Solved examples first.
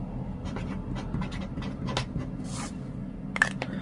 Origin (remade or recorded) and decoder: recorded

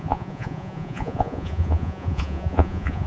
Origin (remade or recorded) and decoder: remade, vocoder, Vocos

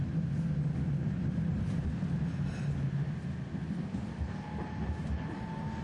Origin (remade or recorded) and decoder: recorded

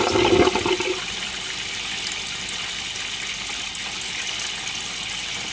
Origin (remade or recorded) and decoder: recorded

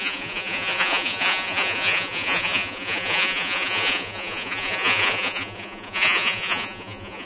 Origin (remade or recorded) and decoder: remade, vocoder, Vocos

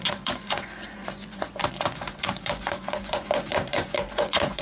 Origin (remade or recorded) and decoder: remade, vocoder, Vocos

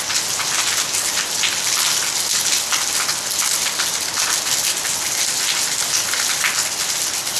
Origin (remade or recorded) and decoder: recorded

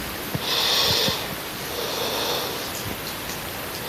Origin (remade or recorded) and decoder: recorded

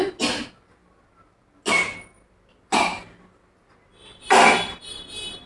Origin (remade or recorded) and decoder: recorded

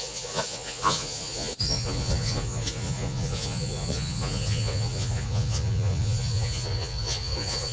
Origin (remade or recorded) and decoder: remade, vocoder, Vocos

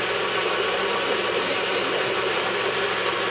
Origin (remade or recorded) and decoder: recorded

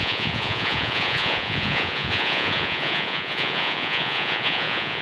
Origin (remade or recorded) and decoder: remade, vocoder, Vocos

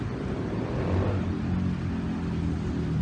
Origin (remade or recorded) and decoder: recorded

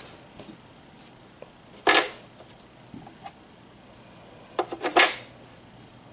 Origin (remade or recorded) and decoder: recorded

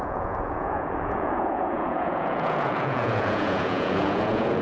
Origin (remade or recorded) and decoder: remade, vocoder, Vocos